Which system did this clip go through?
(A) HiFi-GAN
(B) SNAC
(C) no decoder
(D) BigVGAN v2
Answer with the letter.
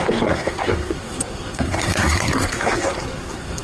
B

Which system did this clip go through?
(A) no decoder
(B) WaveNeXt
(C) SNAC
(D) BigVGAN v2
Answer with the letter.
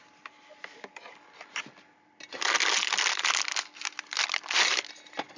A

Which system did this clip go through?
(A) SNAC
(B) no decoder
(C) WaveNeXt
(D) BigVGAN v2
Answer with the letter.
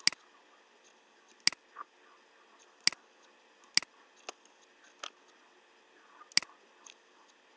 B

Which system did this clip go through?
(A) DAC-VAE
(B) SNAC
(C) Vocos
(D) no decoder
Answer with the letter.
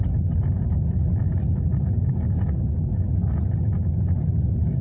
D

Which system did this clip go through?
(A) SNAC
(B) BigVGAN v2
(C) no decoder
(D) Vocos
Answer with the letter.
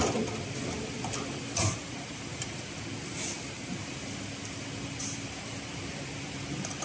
C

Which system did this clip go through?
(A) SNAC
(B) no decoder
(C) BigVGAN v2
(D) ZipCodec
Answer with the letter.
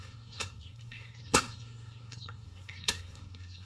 A